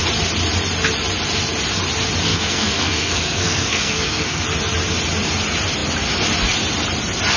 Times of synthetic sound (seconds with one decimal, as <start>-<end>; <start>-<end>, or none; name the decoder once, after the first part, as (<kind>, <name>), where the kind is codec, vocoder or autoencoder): 2.3-4.4 (codec, SNAC)